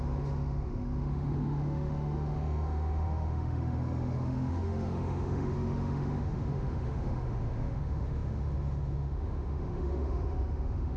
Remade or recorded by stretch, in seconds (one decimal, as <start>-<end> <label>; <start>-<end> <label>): 0.0-11.0 remade